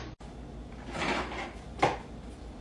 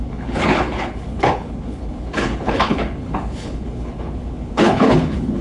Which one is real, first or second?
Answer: first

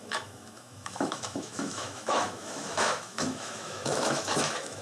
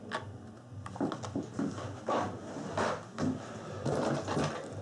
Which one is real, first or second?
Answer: second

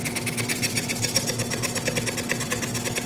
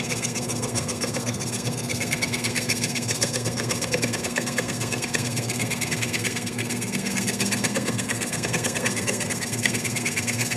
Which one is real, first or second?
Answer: first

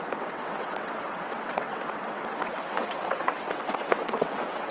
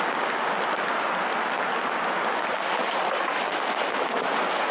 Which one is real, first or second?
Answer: second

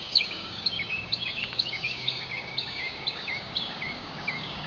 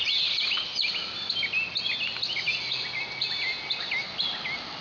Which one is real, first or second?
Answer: second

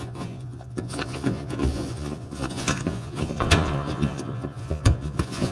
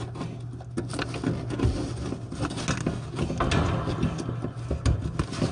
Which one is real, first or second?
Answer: second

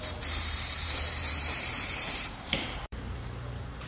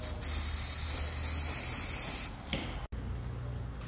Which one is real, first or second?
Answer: second